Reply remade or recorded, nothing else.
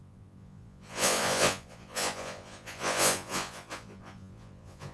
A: remade